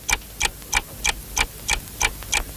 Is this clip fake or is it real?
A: real